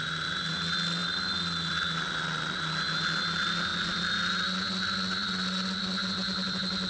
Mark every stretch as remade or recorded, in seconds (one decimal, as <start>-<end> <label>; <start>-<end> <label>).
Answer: 0.0-6.9 recorded